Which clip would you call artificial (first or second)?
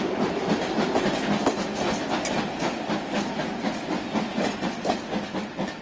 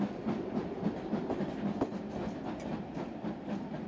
second